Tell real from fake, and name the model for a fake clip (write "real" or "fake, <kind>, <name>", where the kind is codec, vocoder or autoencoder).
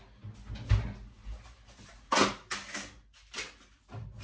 real